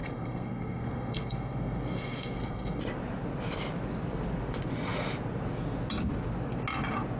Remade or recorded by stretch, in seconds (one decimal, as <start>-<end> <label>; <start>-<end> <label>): 0.0-2.8 remade; 2.8-7.2 recorded